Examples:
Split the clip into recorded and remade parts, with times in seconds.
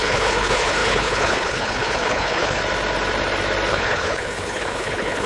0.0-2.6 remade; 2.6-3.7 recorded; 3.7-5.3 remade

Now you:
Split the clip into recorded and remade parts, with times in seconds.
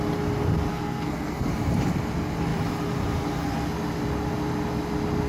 0.0-0.7 recorded; 0.7-1.5 remade; 1.5-5.3 recorded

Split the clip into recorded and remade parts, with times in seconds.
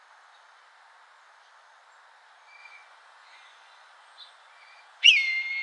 0.0-2.6 recorded; 2.6-5.1 remade; 5.1-5.6 recorded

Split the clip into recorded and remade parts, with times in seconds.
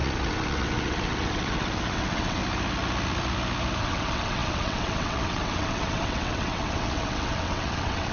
0.0-2.4 remade; 2.4-3.8 recorded; 3.8-8.1 remade